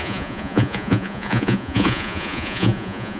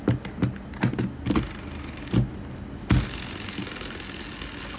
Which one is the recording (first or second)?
second